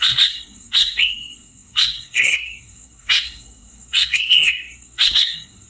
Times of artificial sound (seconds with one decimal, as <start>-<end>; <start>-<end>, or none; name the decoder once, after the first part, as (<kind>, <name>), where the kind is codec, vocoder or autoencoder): 0.0-5.7 (codec, SNAC)